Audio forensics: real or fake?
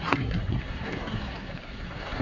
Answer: fake